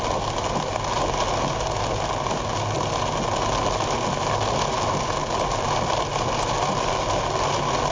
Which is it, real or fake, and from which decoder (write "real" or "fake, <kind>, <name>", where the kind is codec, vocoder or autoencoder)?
real